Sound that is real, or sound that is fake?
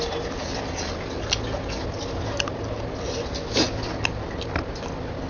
real